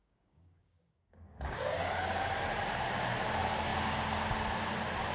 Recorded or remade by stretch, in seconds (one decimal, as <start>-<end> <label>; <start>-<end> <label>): 0.0-2.2 remade; 2.2-5.1 recorded